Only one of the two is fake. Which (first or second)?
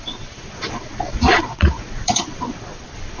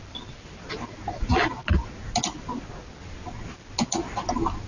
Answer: first